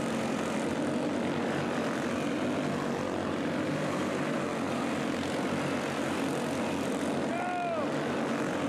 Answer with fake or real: real